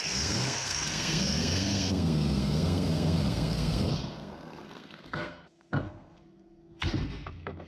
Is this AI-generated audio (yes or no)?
yes